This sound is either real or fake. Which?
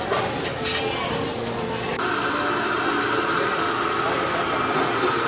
real